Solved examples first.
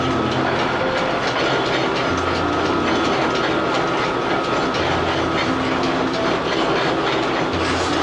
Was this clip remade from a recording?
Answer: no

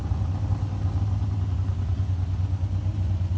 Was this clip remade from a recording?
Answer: no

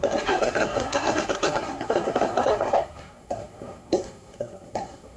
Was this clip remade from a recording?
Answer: yes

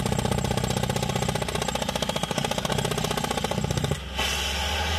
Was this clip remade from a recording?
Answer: no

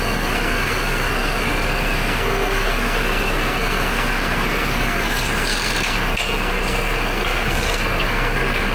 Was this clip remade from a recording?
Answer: yes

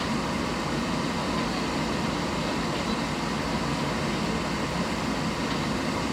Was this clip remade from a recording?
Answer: no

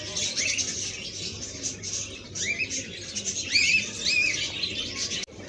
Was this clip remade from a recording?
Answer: no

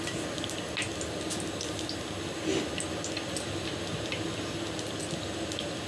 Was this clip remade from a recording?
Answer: no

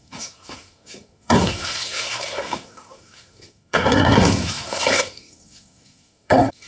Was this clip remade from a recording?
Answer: yes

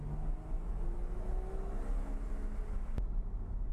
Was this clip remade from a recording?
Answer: no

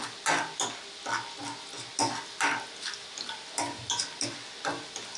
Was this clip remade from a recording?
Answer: no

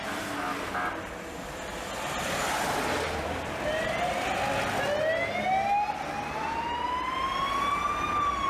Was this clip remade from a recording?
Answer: no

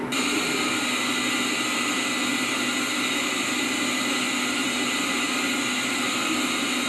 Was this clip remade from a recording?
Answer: no